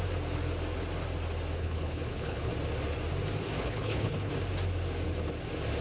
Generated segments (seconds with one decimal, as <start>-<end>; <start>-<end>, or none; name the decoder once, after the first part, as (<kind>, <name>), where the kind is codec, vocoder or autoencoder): 1.6-2.5 (codec, HILCodec); 3.6-4.3